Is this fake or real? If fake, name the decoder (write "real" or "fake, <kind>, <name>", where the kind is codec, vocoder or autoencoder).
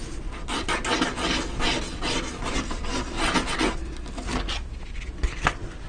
real